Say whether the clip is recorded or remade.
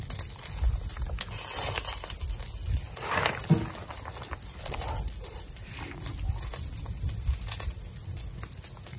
recorded